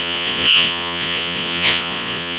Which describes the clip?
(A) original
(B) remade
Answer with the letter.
B